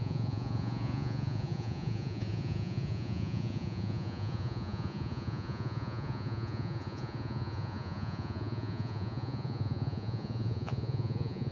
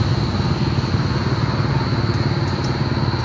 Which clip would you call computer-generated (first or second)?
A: first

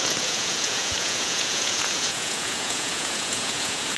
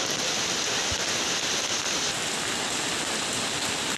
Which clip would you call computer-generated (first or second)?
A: first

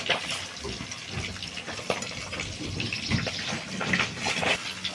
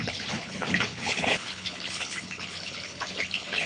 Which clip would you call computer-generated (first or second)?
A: second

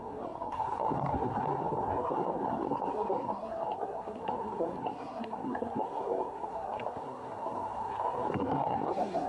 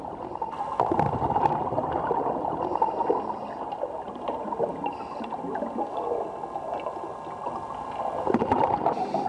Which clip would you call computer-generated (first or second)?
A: first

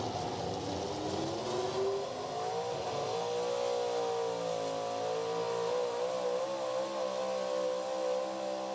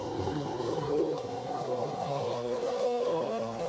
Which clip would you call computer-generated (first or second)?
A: second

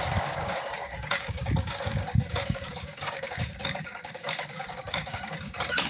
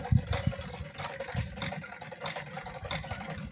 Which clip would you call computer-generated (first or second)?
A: first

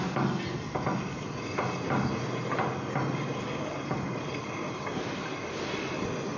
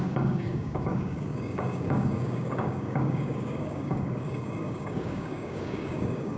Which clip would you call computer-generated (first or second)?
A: second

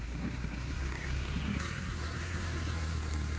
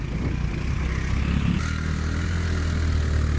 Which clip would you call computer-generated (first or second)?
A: first